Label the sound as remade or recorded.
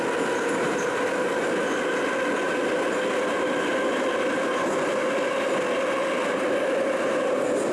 recorded